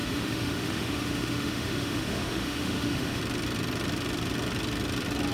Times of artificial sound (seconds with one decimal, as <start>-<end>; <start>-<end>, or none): 0.0-3.2

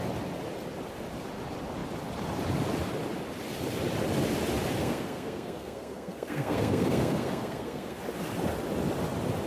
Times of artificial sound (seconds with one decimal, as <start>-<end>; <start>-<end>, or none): 4.8-8.0

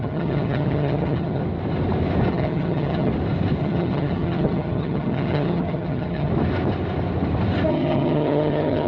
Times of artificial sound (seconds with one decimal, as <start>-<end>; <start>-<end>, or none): 0.0-1.4; 2.3-3.1; 3.6-6.3; 7.7-8.9

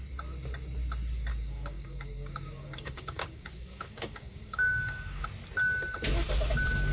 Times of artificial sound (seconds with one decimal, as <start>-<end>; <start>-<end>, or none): 1.3-5.2

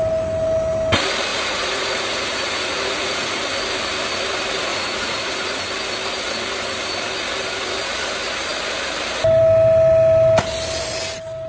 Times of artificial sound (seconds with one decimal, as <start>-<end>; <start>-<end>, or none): 1.3-3.4; 4.7-5.6

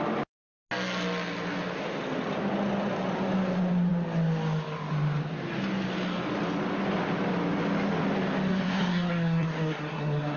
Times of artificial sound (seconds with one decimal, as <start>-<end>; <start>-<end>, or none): 8.5-10.4

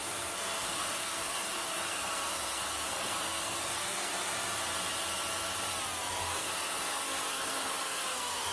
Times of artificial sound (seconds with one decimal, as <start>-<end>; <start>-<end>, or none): 0.0-4.1; 6.1-8.5

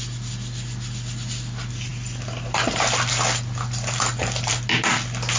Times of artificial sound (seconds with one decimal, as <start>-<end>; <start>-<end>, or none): 1.9-4.5